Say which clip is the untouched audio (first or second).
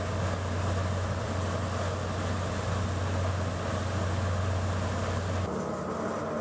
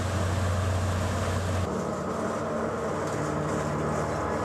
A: second